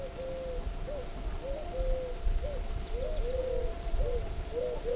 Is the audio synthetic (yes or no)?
no